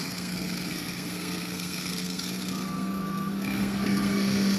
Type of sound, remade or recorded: remade